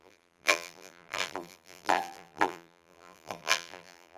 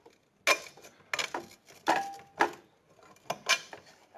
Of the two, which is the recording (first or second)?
second